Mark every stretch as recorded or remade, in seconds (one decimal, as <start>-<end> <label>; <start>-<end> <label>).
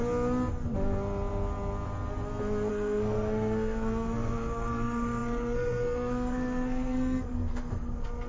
0.0-2.7 recorded; 2.7-8.3 remade